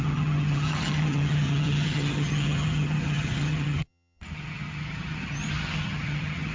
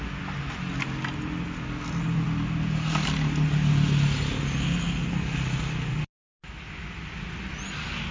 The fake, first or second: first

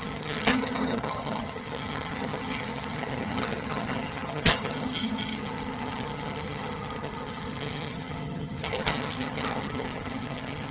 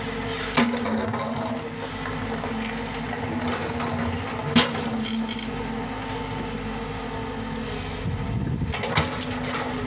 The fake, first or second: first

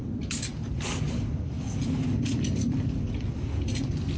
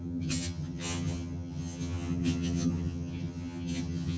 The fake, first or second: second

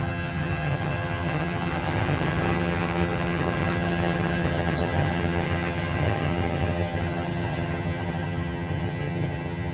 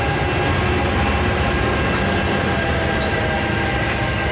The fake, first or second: first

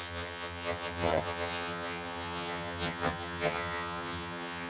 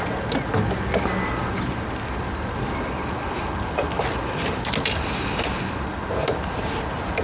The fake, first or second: first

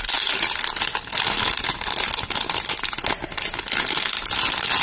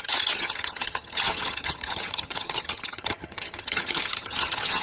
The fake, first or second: second